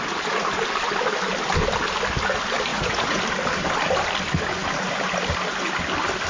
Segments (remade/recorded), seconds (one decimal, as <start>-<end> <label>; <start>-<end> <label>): 0.0-2.7 recorded; 2.7-3.2 remade; 3.2-6.3 recorded